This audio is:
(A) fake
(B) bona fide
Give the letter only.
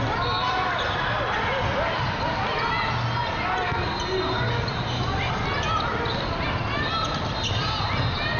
B